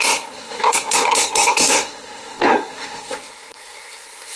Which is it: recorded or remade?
remade